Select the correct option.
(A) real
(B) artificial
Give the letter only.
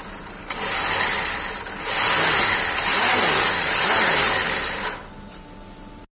A